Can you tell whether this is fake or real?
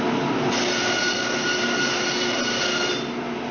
real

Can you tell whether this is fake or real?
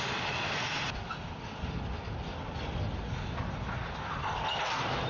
real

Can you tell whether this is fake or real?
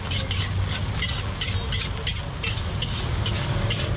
real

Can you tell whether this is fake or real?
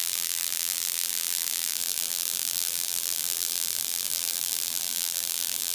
fake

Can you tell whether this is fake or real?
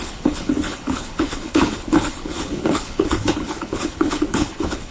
fake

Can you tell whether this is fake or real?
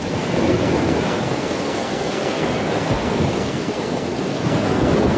fake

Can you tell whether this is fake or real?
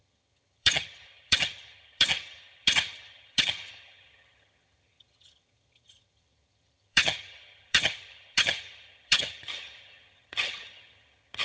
fake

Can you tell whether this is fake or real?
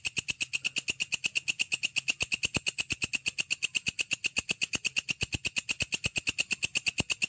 real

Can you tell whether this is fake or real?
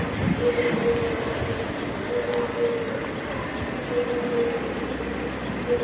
real